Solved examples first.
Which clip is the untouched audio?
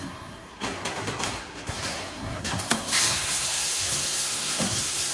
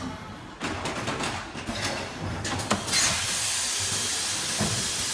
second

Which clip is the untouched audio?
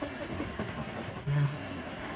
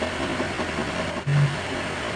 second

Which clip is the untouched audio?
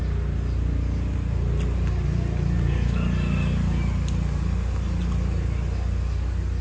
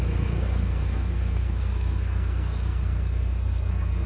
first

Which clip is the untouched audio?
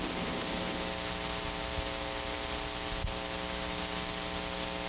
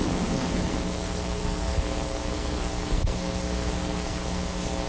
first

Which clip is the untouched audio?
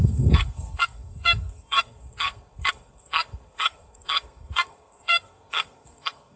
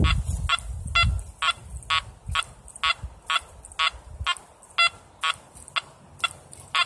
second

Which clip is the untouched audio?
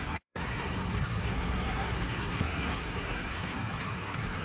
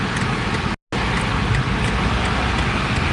second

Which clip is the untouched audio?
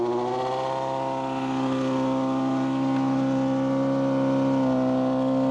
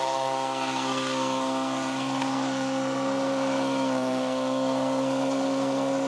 first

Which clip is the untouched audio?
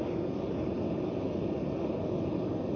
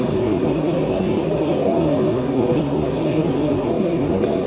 first